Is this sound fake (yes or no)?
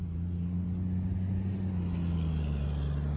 no